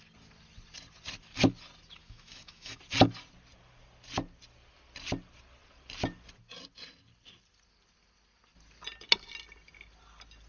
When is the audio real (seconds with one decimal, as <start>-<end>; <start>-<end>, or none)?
0.0-2.0; 2.8-10.5